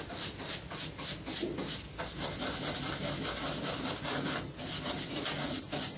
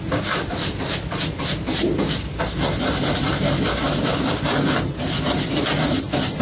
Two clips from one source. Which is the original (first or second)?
first